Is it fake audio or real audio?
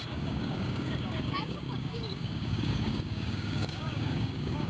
fake